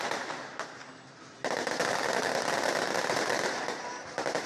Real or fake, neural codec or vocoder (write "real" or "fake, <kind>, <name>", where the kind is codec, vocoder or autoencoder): real